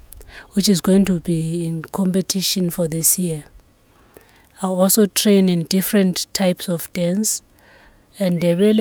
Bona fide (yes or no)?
no